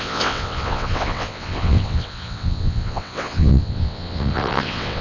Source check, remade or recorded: remade